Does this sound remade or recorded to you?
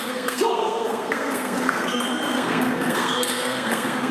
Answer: remade